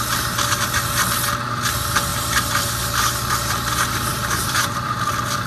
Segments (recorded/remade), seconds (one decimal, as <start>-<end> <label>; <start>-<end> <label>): 0.0-2.1 recorded; 2.1-3.3 remade; 3.3-4.1 recorded; 4.1-5.5 remade